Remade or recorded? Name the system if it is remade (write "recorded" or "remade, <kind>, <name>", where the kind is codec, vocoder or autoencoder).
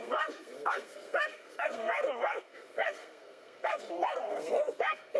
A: remade, codec, SNAC